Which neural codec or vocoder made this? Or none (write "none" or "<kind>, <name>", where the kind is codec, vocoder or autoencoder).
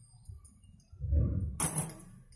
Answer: none